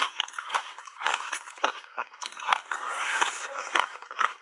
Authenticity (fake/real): fake